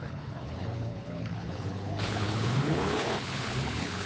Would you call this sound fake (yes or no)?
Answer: yes